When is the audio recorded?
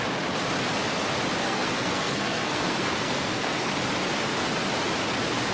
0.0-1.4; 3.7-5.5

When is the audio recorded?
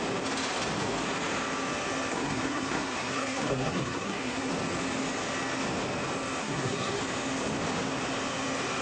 0.0-2.1; 4.5-6.4; 7.0-8.8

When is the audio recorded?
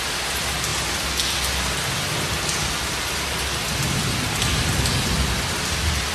0.0-6.1